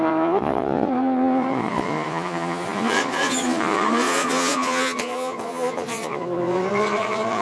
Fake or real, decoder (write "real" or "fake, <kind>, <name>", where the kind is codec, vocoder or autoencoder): fake, vocoder, Vocos